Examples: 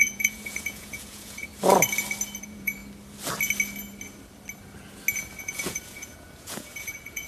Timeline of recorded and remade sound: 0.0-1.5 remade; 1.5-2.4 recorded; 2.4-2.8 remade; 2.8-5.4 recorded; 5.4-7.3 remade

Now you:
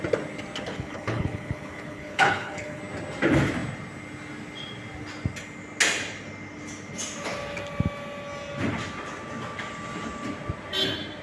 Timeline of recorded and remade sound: 0.0-0.7 recorded; 0.7-2.8 remade; 2.8-11.2 recorded

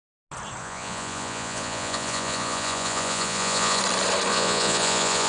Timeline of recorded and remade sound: 0.0-0.6 recorded; 0.6-3.8 remade; 3.8-4.3 recorded; 4.3-5.3 remade

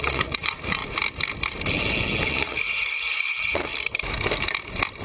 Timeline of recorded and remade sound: 0.0-0.8 remade; 0.8-2.3 recorded; 2.3-3.7 remade; 3.7-5.0 recorded

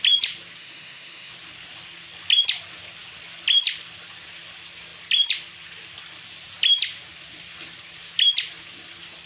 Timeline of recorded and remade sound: 0.0-0.6 recorded; 0.6-1.3 remade; 1.3-9.3 recorded

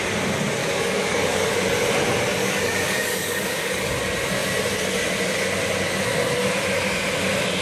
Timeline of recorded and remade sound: 0.0-0.6 recorded; 0.6-1.6 remade; 1.6-2.4 recorded; 2.4-3.9 remade; 3.9-7.6 recorded

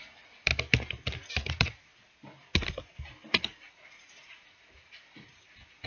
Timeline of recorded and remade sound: 0.0-0.5 remade; 0.5-1.5 recorded; 1.5-2.2 remade; 2.2-3.6 recorded; 3.6-5.9 remade

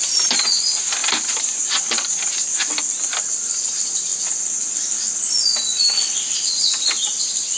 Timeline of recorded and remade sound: 0.0-1.0 recorded; 1.0-2.6 remade; 2.6-7.6 recorded